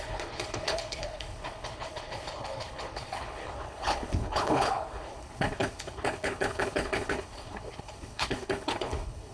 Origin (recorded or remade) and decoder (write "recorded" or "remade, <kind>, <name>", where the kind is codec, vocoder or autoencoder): remade, codec, HILCodec